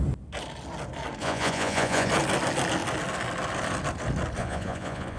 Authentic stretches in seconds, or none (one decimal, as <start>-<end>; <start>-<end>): 0.0-1.2; 2.1-4.4